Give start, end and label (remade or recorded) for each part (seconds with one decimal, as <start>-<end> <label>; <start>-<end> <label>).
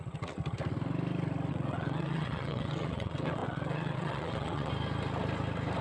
0.0-0.4 remade; 0.4-1.5 recorded; 1.5-4.7 remade; 4.7-5.8 recorded